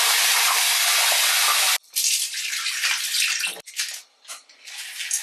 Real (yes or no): yes